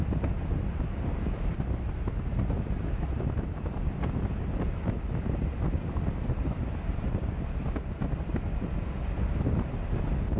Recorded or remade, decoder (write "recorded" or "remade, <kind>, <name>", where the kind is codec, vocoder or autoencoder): recorded